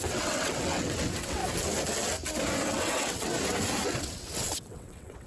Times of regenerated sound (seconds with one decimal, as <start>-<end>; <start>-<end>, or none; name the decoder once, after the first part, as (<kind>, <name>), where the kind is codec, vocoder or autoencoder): 0.0-1.4 (vocoder, WaveNeXt); 2.7-3.3; 4.0-5.3